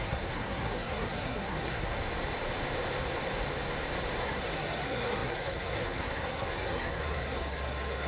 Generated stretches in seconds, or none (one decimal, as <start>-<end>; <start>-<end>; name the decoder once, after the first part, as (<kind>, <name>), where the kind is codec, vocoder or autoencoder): 0.0-2.0 (codec, SNAC); 4.2-8.1